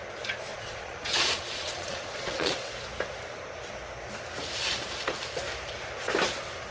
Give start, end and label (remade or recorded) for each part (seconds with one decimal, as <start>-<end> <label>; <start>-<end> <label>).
0.0-0.5 recorded; 0.5-2.7 remade; 2.7-6.7 recorded